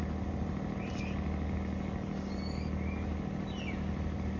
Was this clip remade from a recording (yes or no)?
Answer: no